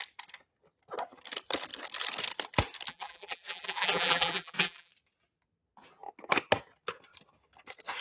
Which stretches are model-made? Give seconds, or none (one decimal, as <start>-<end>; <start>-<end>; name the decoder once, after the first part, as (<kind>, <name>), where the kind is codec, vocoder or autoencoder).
2.9-4.9 (vocoder, BigVGAN v2)